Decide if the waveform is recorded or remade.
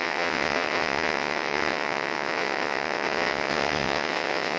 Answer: remade